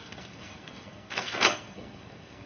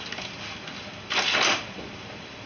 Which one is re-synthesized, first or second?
first